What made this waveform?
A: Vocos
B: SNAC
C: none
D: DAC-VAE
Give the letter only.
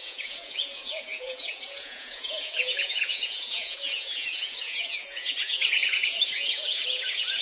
A